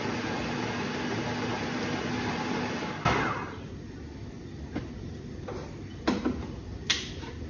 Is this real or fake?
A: real